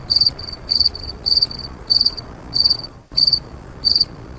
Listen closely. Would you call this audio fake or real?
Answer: fake